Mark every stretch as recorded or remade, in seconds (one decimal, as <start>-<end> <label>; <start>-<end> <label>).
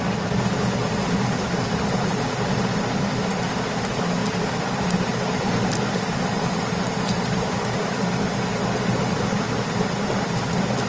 0.0-10.9 recorded